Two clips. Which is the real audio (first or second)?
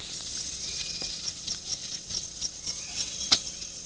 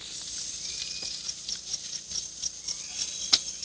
second